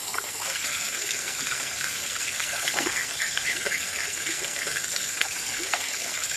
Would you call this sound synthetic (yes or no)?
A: yes